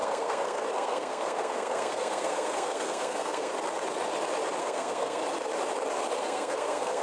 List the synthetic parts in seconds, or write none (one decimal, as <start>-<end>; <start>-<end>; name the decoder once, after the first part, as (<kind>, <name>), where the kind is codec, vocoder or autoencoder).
0.0-3.5 (codec, SNAC); 4.6-5.2; 6.2-7.0

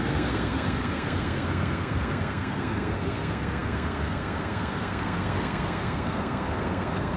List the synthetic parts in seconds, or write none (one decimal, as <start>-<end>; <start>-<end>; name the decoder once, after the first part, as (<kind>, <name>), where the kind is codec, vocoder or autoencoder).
0.0-7.2 (codec, SNAC)